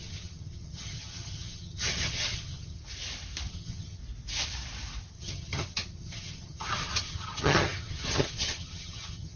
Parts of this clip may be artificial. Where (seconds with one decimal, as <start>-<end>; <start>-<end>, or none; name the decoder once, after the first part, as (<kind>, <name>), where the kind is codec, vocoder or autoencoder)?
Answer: 0.0-2.8 (vocoder, HiFi-GAN); 3.5-4.0; 5.1-9.4